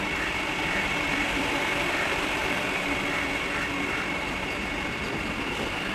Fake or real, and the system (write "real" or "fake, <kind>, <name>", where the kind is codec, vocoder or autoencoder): fake, vocoder, BigVGAN v2